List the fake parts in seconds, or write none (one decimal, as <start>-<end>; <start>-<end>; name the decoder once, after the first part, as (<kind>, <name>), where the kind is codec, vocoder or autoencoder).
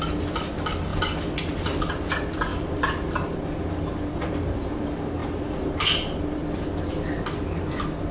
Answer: 0.9-1.9 (vocoder, BigVGAN v2); 2.5-4.5; 5.2-6.8